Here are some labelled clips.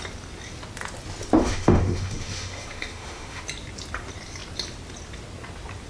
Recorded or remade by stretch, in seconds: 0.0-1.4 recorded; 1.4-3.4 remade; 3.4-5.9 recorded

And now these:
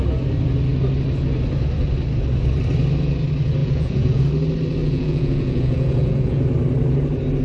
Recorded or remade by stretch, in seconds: 0.0-3.6 recorded; 3.6-4.2 remade; 4.2-4.8 recorded; 4.8-6.4 remade; 6.4-7.4 recorded

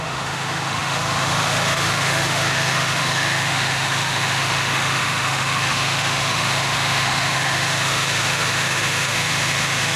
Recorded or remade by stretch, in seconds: 0.0-10.0 remade

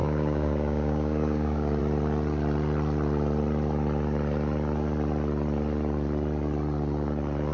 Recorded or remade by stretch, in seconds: 0.0-1.8 remade; 1.8-7.5 recorded

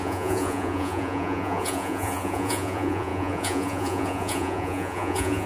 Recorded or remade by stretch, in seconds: 0.0-5.5 remade